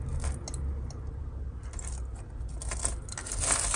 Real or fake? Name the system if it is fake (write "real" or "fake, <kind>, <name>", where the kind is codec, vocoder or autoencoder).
real